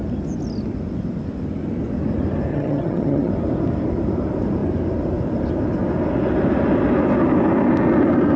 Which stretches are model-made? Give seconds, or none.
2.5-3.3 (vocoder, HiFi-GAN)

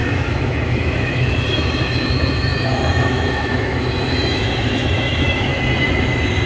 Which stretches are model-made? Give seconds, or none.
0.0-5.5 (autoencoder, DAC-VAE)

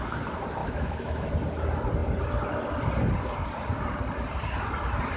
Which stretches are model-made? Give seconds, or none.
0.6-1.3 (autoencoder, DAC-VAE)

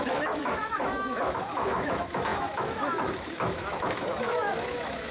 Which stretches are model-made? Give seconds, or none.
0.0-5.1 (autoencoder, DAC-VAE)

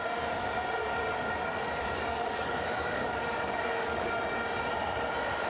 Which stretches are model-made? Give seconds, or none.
0.8-4.1 (codec, DAC)

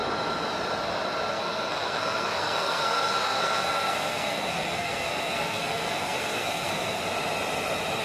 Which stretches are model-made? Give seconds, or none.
1.3-7.0 (codec, SNAC)

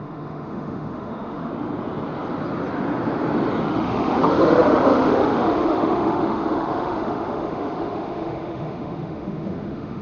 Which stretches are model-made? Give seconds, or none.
0.0-1.5 (autoencoder, DAC-VAE); 3.6-10.0

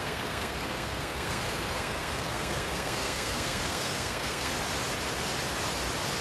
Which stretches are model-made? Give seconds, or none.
0.0-4.5 (codec, SNAC)